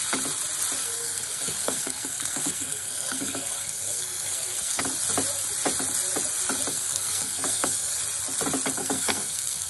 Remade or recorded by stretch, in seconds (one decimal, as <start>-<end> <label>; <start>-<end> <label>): 0.0-0.8 recorded; 0.8-4.8 remade; 4.8-6.7 recorded; 6.7-8.0 remade; 8.0-8.8 recorded; 8.8-9.7 remade